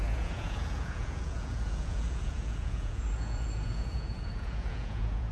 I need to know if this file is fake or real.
fake